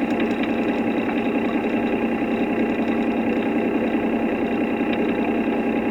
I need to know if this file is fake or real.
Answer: real